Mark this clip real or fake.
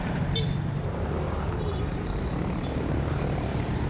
fake